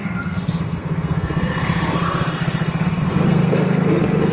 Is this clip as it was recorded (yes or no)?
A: no